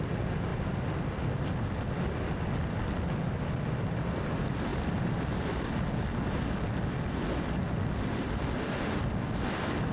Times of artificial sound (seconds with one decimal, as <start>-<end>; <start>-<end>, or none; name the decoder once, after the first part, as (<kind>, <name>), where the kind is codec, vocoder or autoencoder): none